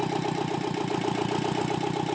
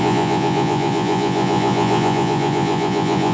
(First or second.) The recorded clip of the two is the first